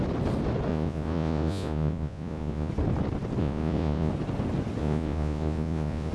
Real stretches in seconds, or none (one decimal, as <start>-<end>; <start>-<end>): 0.0-0.7; 2.7-3.4; 4.1-4.8